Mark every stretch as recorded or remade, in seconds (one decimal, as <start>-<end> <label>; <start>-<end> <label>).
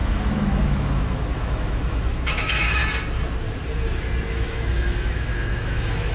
0.0-2.8 remade; 2.8-4.3 recorded; 4.3-6.1 remade